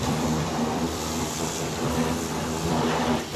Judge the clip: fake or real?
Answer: fake